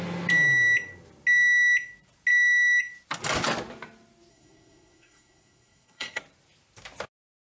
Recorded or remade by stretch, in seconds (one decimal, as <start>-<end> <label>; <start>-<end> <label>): 0.0-4.3 recorded; 4.3-6.2 remade; 6.2-7.4 recorded